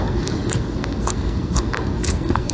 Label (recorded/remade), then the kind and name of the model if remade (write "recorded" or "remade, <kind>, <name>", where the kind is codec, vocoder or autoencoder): remade, codec, SNAC